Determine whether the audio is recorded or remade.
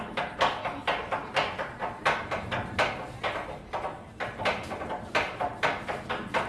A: recorded